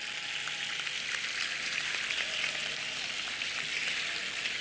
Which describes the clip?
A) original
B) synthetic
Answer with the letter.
A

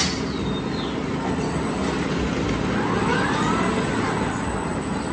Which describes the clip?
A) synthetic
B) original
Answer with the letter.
B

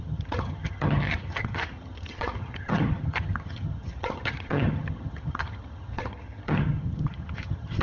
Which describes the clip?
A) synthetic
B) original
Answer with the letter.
A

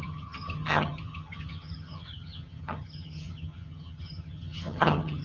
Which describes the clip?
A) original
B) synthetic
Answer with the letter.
B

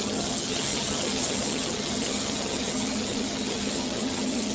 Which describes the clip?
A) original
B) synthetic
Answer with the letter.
B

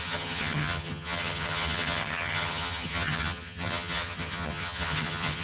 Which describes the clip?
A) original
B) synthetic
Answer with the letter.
B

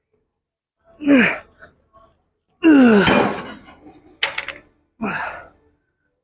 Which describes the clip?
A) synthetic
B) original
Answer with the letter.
B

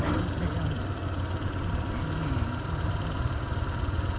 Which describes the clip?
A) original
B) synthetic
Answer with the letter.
A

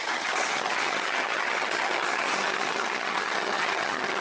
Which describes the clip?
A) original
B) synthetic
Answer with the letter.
B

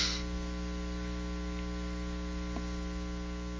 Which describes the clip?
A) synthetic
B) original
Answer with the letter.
B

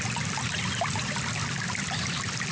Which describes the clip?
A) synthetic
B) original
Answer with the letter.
B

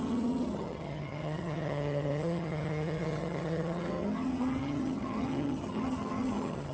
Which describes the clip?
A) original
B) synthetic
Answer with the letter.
B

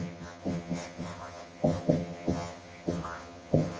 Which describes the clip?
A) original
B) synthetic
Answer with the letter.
B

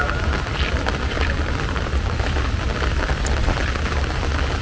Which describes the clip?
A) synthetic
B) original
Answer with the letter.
B